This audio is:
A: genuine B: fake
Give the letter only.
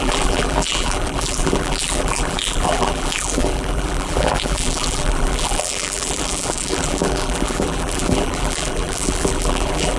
B